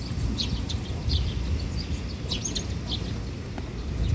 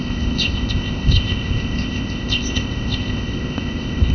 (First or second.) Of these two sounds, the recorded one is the first